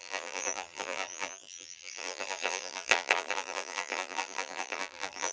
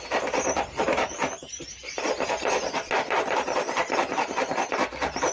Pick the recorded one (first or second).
second